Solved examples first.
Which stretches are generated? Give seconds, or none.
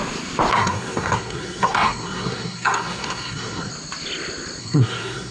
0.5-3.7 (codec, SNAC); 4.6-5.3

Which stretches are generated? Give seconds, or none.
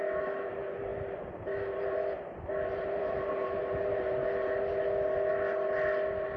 none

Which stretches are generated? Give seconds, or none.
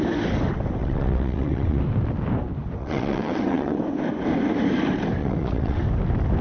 0.8-1.8 (vocoder, WaveNeXt); 2.8-3.8; 5.2-5.8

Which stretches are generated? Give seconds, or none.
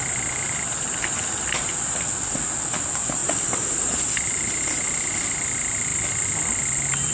none